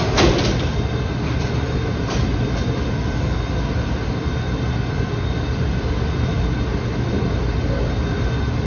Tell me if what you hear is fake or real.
real